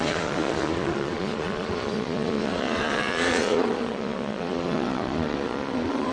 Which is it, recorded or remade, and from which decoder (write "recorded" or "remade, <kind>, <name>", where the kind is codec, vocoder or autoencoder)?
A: remade, vocoder, Vocos